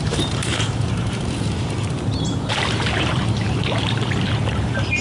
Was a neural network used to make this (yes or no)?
yes